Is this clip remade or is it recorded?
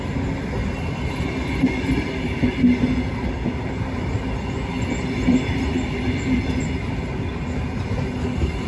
recorded